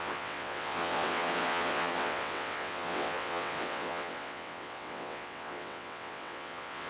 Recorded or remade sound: remade